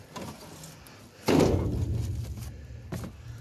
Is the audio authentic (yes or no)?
yes